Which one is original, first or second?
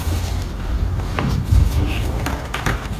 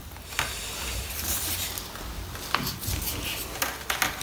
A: second